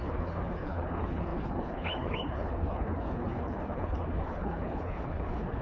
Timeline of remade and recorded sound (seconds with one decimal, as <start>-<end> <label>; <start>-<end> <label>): 0.0-5.6 remade